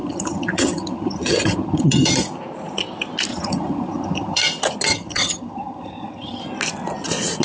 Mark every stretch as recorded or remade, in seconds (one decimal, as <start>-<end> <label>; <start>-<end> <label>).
0.0-2.1 remade; 2.1-3.3 recorded; 3.3-4.4 remade; 4.4-4.9 recorded; 4.9-6.4 remade; 6.4-7.4 recorded